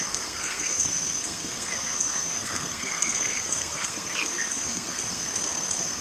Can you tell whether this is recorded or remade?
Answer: remade